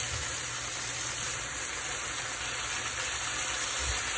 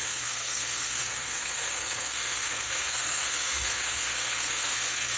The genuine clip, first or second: first